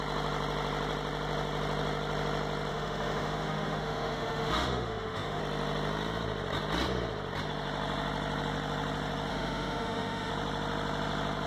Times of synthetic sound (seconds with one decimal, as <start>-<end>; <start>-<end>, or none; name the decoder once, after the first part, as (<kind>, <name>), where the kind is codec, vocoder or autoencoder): 2.7-5.4 (autoencoder, DAC-VAE); 9.3-10.3